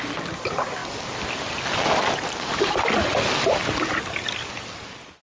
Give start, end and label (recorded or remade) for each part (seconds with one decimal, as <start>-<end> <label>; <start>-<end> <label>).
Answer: 0.0-5.3 recorded